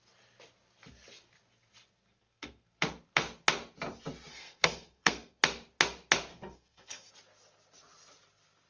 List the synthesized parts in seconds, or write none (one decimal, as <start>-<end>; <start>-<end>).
2.1-2.8; 4.3-5.4; 6.3-7.1